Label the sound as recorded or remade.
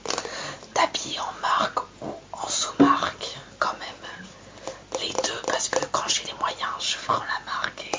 recorded